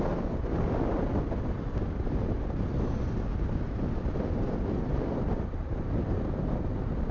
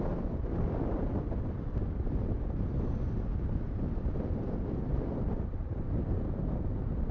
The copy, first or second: second